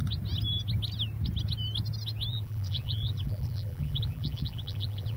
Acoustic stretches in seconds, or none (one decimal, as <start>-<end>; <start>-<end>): 0.0-2.3